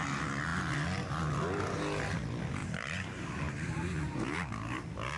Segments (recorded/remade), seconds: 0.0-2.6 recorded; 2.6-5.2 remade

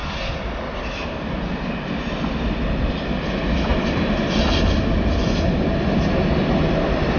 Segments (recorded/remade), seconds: 0.0-1.5 remade; 1.5-3.7 recorded; 3.7-4.4 remade; 4.4-7.2 recorded

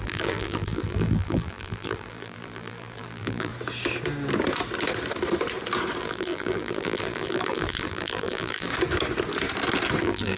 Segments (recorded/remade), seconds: 0.0-3.5 remade; 3.5-6.0 recorded; 6.0-8.7 remade; 8.7-10.0 recorded; 10.0-10.4 remade

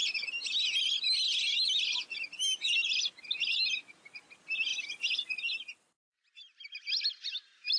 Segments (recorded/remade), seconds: 0.0-4.7 recorded; 4.7-5.4 remade; 5.4-7.8 recorded

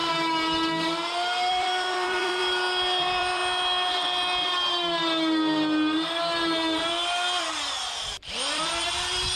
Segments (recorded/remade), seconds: 0.0-1.5 recorded; 1.5-2.4 remade; 2.4-3.0 recorded; 3.0-3.4 remade; 3.4-7.4 recorded; 7.4-9.4 remade

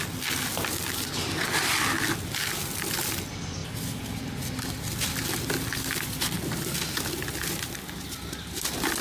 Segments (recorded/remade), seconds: 0.0-9.0 recorded